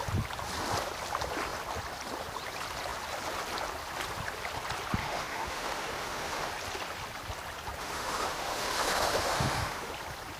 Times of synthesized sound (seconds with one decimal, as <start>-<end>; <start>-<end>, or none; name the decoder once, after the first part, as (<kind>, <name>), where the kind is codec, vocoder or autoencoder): 5.0-6.5 (autoencoder, DAC-VAE); 7.8-9.9